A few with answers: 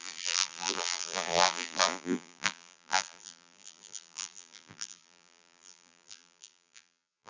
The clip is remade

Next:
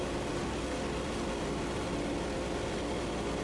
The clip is recorded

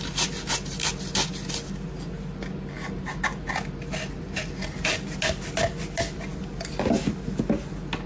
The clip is recorded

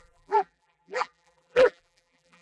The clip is remade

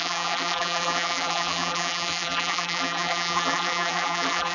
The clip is remade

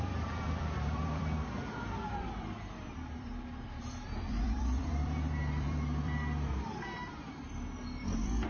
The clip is remade